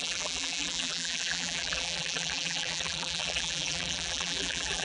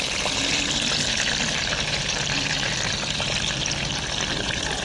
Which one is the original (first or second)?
second